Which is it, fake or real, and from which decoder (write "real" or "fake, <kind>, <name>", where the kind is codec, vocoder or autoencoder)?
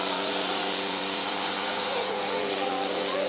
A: fake, vocoder, Vocos